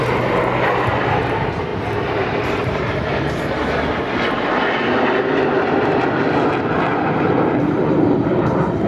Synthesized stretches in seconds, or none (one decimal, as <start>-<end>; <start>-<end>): 1.7-3.4; 6.9-8.9